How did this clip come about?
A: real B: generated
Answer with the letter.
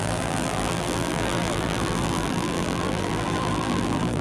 B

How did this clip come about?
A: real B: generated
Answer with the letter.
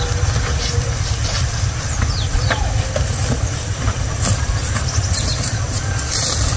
A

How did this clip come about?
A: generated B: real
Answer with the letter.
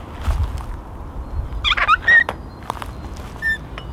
B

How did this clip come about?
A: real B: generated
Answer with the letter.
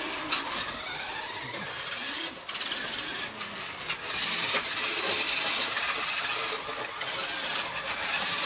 A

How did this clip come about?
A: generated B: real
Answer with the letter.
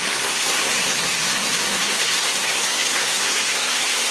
A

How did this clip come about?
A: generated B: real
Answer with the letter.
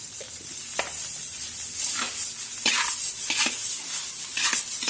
B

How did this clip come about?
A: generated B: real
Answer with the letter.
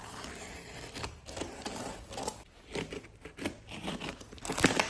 B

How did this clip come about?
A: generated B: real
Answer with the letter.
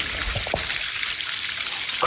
B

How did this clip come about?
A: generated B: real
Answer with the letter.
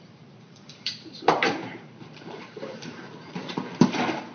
A